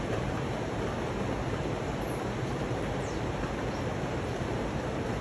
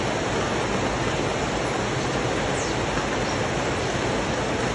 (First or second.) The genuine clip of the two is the second